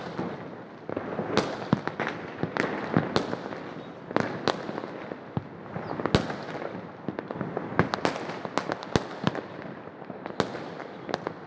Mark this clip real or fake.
real